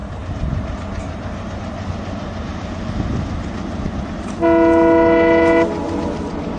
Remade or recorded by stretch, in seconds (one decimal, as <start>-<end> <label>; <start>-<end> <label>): 0.0-6.6 recorded